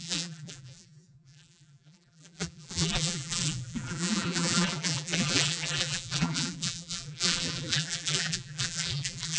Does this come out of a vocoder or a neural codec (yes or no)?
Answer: yes